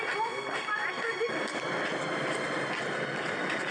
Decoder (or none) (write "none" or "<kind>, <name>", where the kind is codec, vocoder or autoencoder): none